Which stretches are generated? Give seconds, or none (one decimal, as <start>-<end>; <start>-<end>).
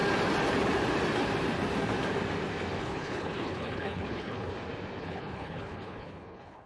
2.8-4.5; 5.0-6.7